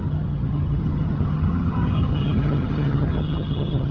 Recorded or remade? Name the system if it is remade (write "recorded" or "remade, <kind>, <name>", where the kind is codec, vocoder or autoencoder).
remade, vocoder, HiFi-GAN